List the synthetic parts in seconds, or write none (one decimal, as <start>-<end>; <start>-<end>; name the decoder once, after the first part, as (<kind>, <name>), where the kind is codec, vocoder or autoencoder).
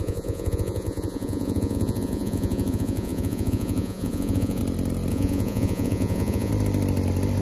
0.0-4.6 (vocoder, Vocos); 5.1-6.5